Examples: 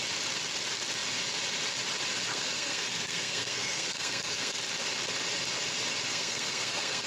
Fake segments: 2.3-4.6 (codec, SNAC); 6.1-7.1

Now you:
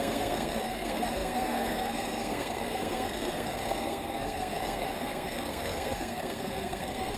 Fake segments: 0.0-7.2 (codec, SNAC)